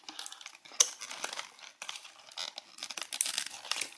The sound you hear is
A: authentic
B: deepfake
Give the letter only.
A